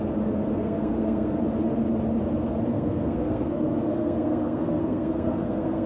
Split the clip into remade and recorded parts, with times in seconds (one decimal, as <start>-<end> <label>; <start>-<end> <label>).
0.0-0.6 recorded; 0.6-1.4 remade; 1.4-2.7 recorded; 2.7-5.9 remade